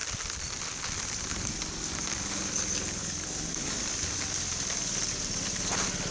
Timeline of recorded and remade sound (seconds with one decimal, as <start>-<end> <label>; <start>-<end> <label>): 0.0-1.3 recorded; 1.3-2.5 remade; 2.5-3.0 recorded; 3.0-3.8 remade; 3.8-6.1 recorded